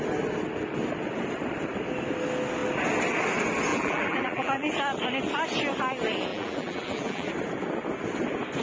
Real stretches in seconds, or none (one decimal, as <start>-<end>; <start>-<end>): 0.0-3.7; 4.7-6.3; 7.3-8.6

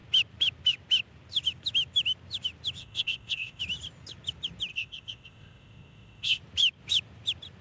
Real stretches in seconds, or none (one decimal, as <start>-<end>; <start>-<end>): 0.0-2.8; 3.6-4.7; 6.4-7.6

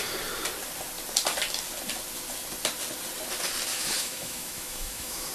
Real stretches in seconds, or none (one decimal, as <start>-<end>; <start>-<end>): 0.0-3.7

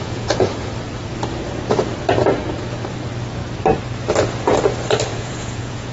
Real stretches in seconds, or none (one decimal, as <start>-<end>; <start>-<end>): 0.7-5.1

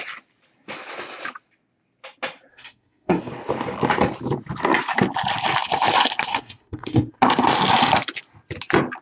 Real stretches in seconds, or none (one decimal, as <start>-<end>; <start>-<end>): 0.0-2.5; 3.2-6.3; 7.1-9.0

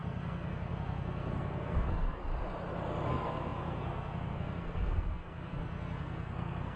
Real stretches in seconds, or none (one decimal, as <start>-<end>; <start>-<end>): 2.3-3.1

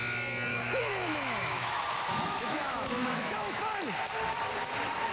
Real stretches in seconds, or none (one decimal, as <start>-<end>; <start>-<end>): 0.0-0.5; 3.6-5.1

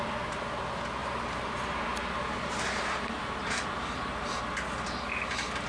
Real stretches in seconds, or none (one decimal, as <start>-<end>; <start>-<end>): 0.0-1.0; 4.4-5.7